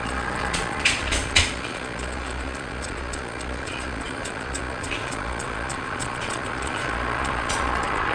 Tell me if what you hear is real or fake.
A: fake